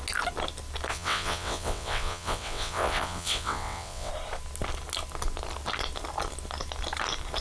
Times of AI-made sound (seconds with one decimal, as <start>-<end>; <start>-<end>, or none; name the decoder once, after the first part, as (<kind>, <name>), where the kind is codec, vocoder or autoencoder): 0.9-4.1 (vocoder, WaveNeXt)